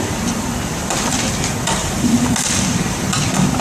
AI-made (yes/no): no